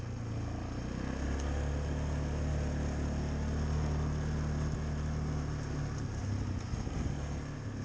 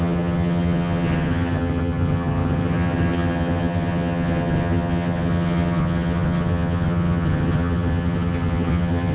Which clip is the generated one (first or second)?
second